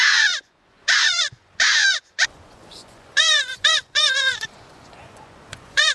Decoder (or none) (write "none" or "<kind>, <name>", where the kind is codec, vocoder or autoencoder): vocoder, Vocos